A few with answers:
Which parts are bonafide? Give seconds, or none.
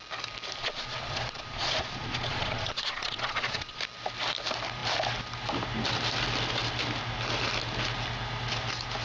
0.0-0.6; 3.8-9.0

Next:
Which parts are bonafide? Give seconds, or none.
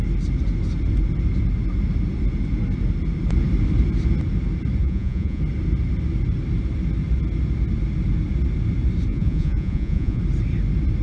0.0-4.8; 5.4-9.1; 10.2-11.0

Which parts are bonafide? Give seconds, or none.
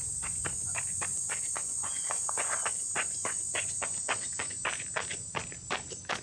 0.0-1.1; 4.5-6.2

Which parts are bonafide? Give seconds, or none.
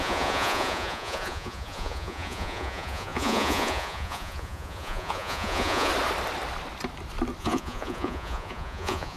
5.9-7.4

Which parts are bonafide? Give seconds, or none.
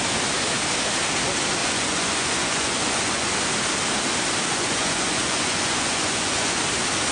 0.0-1.6; 3.3-4.5; 6.6-7.1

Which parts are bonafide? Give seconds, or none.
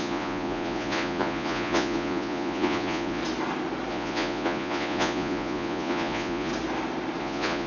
3.2-3.9; 6.5-7.2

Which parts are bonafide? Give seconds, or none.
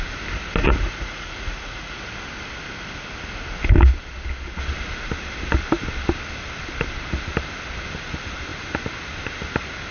0.0-0.6; 2.0-9.9